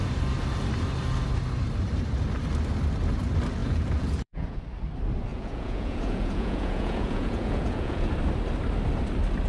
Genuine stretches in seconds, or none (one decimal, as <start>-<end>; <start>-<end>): 0.0-3.6; 4.6-5.3; 8.1-9.5